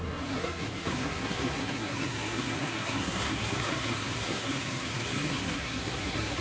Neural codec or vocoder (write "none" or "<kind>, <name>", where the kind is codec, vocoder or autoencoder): codec, SNAC